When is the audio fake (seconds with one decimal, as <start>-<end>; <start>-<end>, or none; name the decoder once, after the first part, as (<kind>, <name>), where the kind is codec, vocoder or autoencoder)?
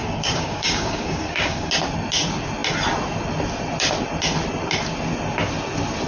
0.0-1.7 (codec, DAC)